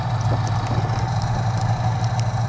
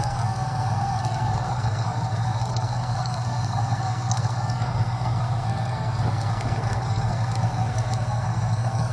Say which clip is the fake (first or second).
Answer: second